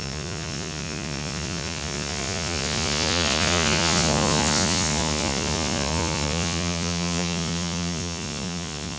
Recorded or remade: remade